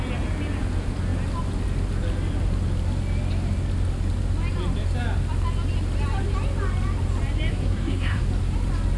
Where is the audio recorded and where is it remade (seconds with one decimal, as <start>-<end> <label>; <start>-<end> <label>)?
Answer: 0.0-7.5 recorded; 7.5-8.2 remade; 8.2-9.0 recorded